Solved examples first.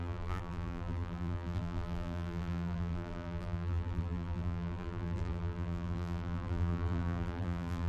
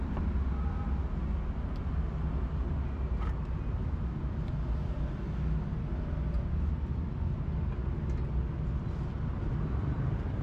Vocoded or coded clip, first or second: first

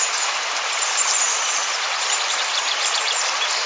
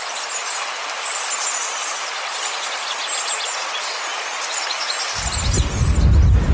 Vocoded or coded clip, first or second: first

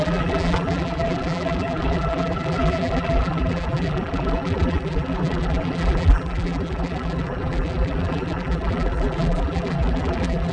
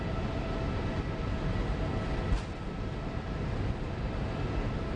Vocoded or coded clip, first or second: first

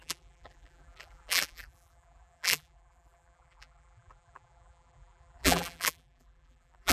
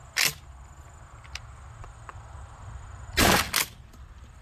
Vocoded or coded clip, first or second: first